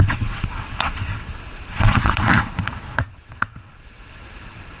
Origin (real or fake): fake